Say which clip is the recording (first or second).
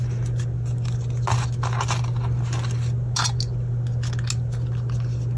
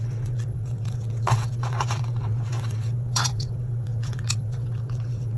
first